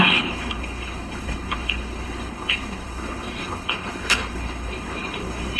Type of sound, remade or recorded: remade